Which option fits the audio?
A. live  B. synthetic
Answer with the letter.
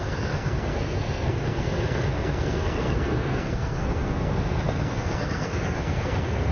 B